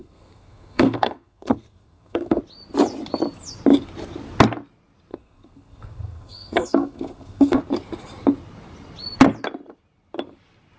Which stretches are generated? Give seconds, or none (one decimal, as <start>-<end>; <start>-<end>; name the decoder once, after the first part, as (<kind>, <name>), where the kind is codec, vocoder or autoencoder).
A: 0.0-2.4 (codec, SNAC); 5.1-7.6